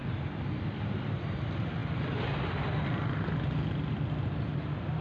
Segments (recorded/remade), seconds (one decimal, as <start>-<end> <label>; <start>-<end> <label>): 0.0-0.8 recorded; 0.8-1.8 remade; 1.8-5.0 recorded